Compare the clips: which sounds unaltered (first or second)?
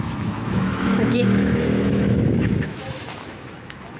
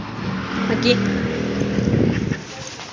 second